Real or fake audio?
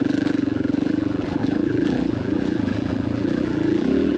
fake